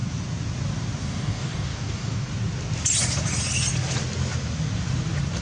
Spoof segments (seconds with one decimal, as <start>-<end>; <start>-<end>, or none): 1.0-2.3

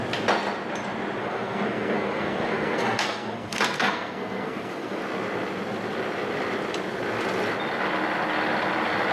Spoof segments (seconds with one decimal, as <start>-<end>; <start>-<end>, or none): 1.2-5.0